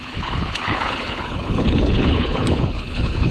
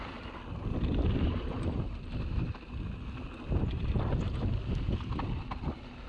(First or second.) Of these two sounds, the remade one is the first